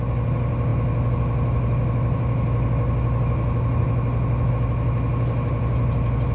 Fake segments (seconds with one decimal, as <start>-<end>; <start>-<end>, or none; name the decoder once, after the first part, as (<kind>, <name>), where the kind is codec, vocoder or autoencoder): none